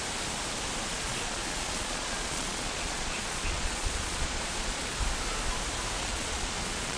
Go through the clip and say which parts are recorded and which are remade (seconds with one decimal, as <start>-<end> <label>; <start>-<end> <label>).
0.0-0.9 recorded; 0.9-5.0 remade; 5.0-6.0 recorded; 6.0-7.0 remade

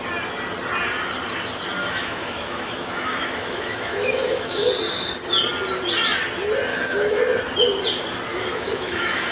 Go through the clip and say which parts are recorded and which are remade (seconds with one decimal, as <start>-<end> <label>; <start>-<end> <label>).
0.0-1.8 recorded; 1.8-4.7 remade; 4.7-6.7 recorded; 6.7-7.2 remade; 7.2-8.3 recorded; 8.3-9.3 remade

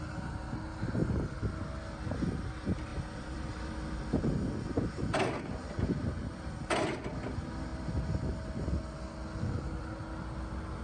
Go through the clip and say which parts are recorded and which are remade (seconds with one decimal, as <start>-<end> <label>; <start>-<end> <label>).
0.0-2.9 recorded; 2.9-4.0 remade; 4.0-10.8 recorded

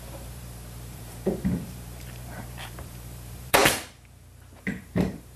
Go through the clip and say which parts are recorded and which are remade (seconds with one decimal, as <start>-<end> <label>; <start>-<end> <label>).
0.0-3.6 remade; 3.6-4.6 recorded; 4.6-5.4 remade

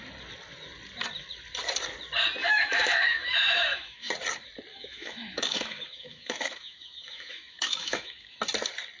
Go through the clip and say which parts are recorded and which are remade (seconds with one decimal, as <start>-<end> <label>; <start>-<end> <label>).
0.0-2.4 recorded; 2.4-4.1 remade; 4.1-4.7 recorded; 4.7-8.4 remade; 8.4-9.0 recorded

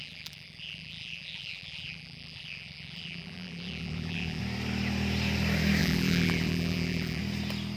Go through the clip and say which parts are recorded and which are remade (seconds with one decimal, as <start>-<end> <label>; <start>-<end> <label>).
0.0-4.4 remade; 4.4-5.8 recorded; 5.8-7.2 remade; 7.2-7.8 recorded